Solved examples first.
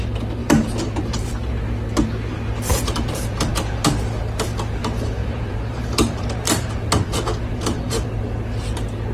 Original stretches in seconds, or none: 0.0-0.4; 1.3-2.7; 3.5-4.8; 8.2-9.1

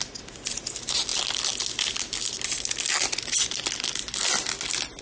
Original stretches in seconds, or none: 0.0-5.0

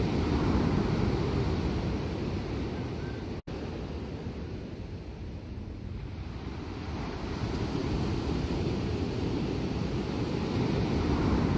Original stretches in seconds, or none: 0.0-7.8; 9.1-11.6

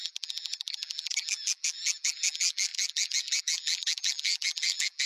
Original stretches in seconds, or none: none

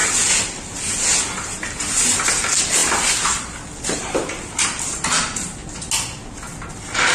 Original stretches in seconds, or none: 5.6-7.1

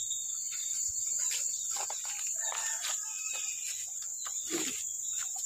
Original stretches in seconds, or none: 0.0-0.6; 1.2-4.1